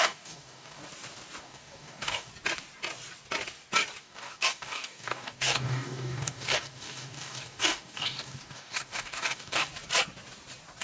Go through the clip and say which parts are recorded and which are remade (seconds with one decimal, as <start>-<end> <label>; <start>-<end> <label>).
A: 0.0-0.8 remade; 0.8-1.4 recorded; 1.4-2.3 remade; 2.3-4.0 recorded; 4.0-9.7 remade; 9.7-10.8 recorded